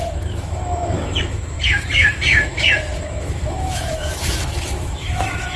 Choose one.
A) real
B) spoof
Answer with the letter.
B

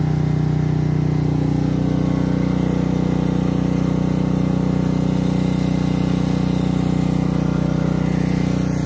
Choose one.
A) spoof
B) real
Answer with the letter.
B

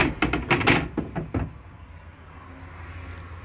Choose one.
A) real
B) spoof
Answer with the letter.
A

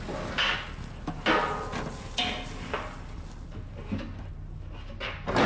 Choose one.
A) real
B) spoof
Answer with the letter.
A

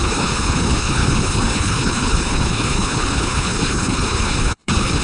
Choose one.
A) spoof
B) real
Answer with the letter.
A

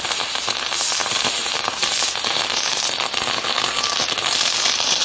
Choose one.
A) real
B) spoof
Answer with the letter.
A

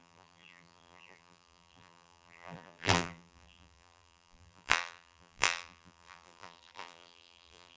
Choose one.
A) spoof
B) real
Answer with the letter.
A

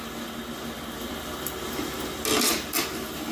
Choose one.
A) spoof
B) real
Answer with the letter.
B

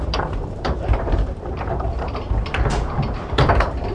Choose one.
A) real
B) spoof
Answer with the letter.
B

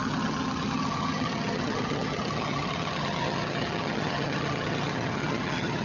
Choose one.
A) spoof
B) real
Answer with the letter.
A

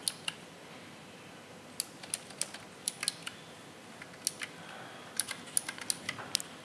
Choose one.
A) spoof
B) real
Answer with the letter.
B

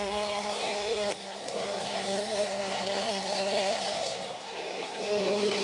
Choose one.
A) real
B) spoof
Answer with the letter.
B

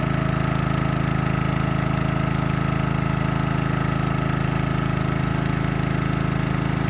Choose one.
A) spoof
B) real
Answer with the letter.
B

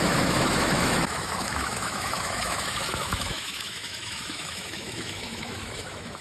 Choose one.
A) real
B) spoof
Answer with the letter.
B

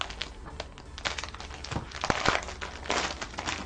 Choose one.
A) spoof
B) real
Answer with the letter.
B